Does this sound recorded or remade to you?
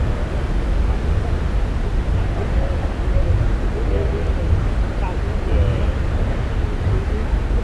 recorded